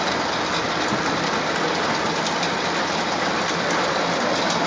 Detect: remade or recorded recorded